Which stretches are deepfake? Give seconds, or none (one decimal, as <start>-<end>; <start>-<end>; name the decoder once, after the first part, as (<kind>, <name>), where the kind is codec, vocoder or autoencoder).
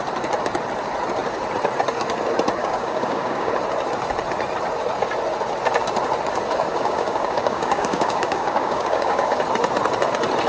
2.6-3.5 (codec, DAC); 6.7-9.4